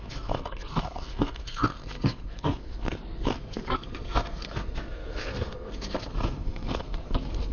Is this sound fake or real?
fake